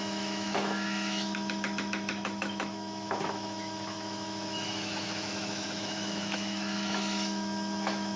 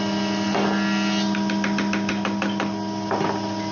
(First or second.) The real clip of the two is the second